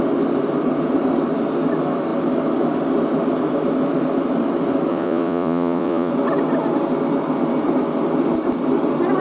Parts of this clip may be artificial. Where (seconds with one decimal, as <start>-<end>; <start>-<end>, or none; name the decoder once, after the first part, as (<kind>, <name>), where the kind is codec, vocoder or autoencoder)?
4.9-6.1 (vocoder, Vocos)